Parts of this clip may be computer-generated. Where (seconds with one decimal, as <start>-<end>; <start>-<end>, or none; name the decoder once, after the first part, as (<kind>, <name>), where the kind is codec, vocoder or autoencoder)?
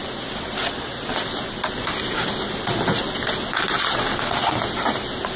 none